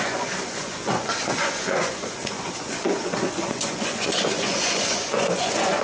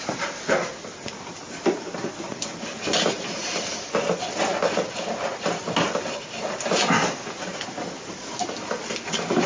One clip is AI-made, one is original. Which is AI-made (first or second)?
first